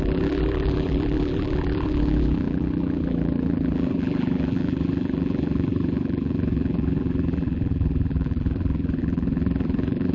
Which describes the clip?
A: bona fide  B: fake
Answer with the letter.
B